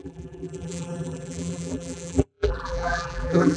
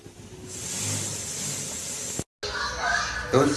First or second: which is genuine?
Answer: second